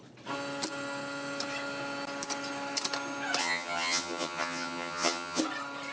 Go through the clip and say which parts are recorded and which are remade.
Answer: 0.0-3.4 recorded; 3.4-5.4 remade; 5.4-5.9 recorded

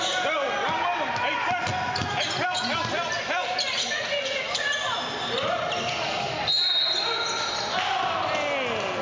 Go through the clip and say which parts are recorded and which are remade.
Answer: 0.0-9.0 recorded